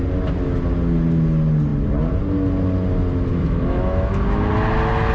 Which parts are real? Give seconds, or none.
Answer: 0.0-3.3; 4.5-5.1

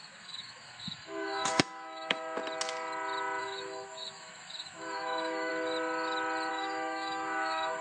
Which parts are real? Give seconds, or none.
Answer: 2.4-3.4; 5.5-6.5

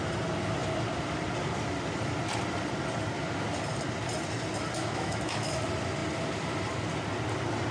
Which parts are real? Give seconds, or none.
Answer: 0.0-4.8; 5.5-7.7

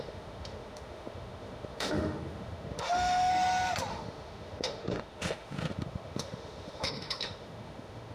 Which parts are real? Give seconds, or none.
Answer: 3.3-3.9

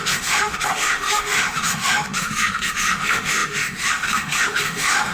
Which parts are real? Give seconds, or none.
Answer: none

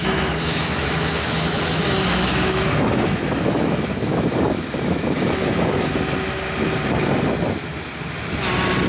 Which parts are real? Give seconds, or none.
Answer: 5.9-8.9

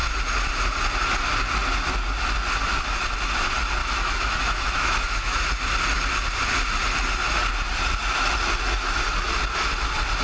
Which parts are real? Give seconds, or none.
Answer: 0.0-3.8; 5.5-10.2

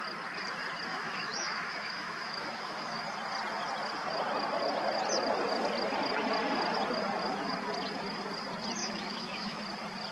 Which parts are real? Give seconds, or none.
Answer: 0.0-0.9; 3.0-8.8; 9.6-10.1